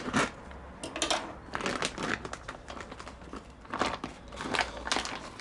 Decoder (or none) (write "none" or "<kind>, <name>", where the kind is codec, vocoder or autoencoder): none